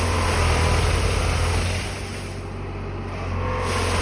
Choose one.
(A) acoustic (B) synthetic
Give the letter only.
A